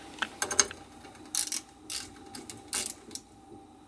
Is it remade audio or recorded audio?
recorded